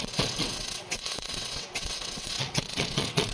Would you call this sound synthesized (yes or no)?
yes